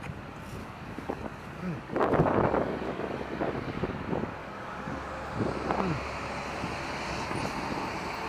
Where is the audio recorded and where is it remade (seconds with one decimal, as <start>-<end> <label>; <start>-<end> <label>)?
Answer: 0.0-0.6 recorded; 0.6-4.0 remade; 4.0-4.4 recorded; 4.4-5.1 remade; 5.1-8.3 recorded